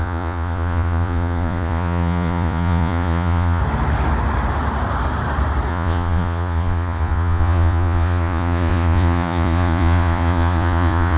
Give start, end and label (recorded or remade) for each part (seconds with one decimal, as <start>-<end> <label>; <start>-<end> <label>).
0.0-3.6 remade; 3.6-5.7 recorded; 5.7-11.2 remade